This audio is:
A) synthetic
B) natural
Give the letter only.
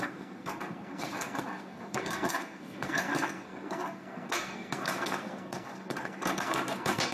A